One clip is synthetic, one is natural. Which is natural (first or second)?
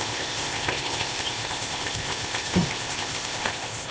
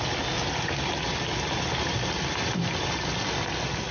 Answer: second